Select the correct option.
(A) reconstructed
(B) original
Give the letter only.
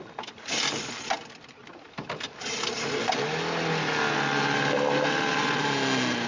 B